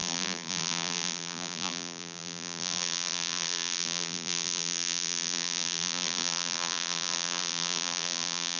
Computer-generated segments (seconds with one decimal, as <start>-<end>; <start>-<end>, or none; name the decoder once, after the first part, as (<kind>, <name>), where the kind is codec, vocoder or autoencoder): 0.0-8.6 (vocoder, BigVGAN v2)